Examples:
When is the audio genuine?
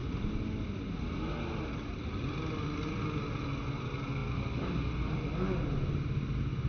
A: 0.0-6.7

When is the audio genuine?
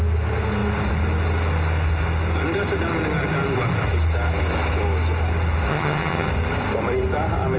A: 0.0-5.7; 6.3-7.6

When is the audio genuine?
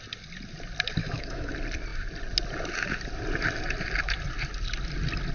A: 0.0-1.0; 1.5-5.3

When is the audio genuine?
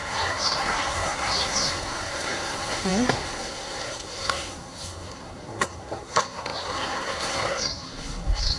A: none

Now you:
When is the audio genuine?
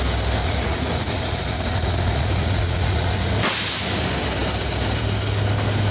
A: 0.0-0.4; 3.3-5.9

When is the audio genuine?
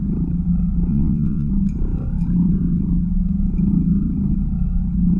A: 0.0-0.9; 1.5-5.2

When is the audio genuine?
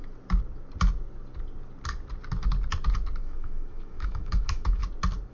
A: 0.0-3.2; 4.8-5.3